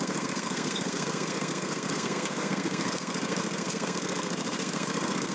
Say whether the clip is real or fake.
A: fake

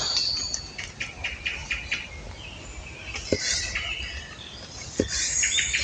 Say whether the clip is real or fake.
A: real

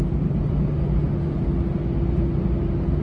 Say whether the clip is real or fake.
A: real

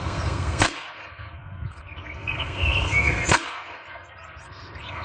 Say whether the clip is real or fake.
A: fake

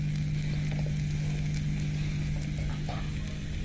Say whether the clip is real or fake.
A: real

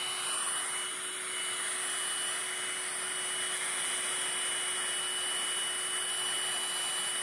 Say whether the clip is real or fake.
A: real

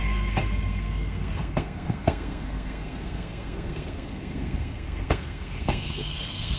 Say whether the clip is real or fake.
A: fake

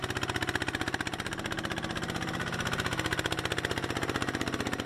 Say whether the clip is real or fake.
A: real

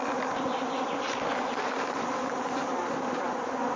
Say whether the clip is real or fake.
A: real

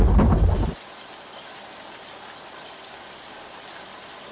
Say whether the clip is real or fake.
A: real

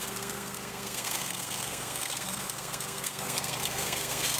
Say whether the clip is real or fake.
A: fake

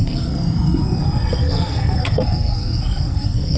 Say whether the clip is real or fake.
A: fake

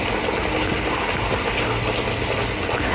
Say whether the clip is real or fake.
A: real